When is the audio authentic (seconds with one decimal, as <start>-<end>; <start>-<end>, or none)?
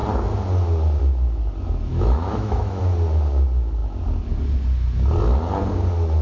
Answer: 0.0-1.9; 2.8-6.2